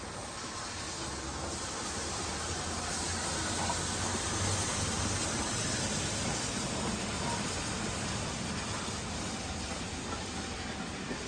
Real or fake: real